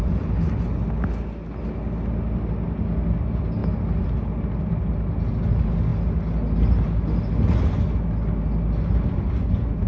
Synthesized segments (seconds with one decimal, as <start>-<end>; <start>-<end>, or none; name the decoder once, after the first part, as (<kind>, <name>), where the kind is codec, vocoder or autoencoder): none